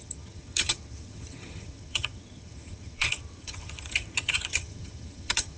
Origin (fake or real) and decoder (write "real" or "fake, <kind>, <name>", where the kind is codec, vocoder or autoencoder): fake, vocoder, HiFi-GAN